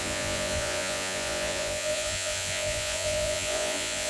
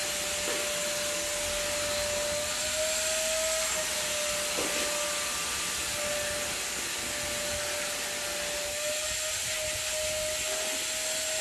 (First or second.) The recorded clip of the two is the second